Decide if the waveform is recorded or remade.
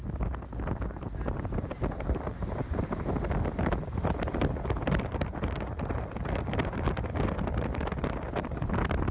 recorded